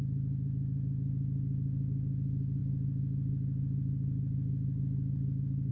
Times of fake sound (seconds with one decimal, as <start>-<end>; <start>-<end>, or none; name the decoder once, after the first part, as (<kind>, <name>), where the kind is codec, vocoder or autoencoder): none